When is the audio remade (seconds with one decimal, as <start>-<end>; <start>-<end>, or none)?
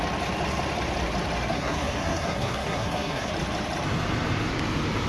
1.5-3.3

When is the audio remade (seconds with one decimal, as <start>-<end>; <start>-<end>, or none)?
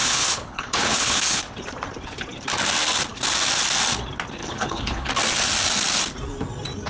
0.0-1.4; 4.4-5.1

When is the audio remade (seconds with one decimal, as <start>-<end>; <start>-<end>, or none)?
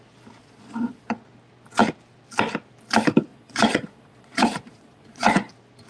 0.4-1.1; 3.3-5.5